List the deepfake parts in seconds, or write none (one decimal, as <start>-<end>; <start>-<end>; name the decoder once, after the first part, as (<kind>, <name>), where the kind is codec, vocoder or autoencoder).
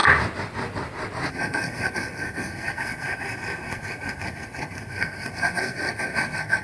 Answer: 1.3-6.6 (codec, SNAC)